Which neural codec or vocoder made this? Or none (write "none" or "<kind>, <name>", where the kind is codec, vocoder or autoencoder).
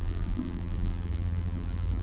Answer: vocoder, BigVGAN v2